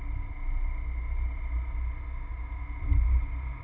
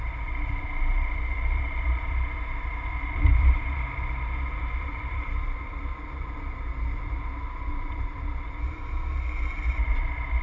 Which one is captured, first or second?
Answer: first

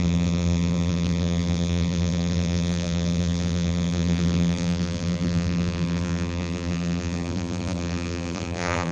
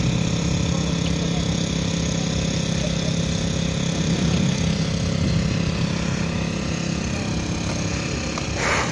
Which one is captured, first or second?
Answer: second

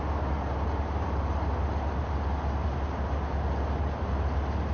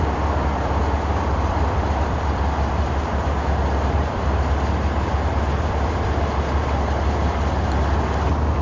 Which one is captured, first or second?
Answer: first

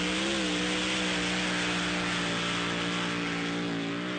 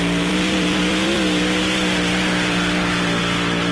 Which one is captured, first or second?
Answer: first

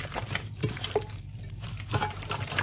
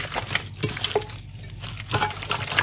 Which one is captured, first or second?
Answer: second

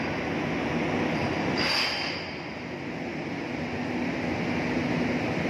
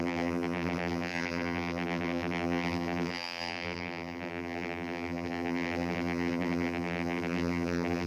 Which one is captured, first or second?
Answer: first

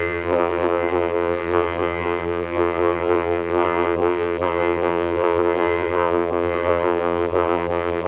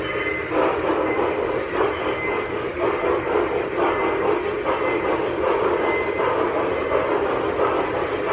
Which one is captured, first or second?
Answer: second